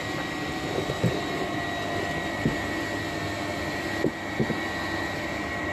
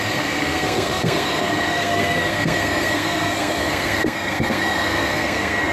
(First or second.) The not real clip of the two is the second